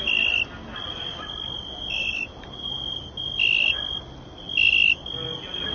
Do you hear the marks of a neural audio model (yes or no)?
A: no